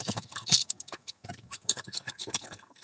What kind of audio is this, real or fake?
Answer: fake